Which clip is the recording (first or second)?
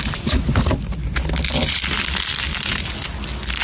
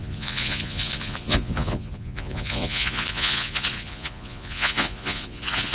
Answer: first